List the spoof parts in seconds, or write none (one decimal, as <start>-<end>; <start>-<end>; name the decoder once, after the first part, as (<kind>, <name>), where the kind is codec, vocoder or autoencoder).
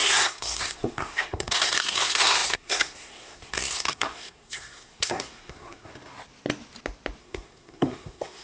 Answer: 0.0-5.9 (codec, SNAC); 7.2-8.4